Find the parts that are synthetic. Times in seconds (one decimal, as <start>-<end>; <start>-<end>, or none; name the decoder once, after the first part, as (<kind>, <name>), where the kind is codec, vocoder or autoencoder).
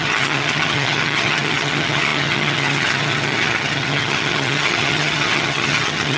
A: 0.0-6.2 (vocoder, HiFi-GAN)